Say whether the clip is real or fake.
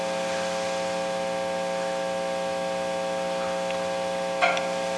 real